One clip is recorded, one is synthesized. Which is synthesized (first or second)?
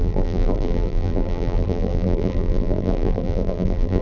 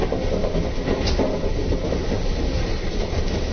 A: first